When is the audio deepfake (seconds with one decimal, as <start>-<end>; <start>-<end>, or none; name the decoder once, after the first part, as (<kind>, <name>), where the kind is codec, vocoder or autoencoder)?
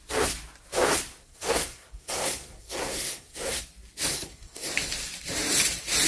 1.3-3.6 (codec, SNAC); 4.1-4.7